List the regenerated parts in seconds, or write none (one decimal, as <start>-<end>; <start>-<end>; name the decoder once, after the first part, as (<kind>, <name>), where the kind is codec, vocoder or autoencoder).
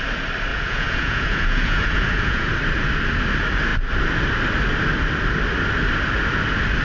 0.5-2.5 (vocoder, Vocos)